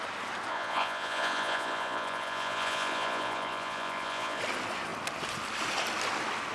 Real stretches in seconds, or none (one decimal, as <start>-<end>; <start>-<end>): 0.0-0.5; 4.4-6.5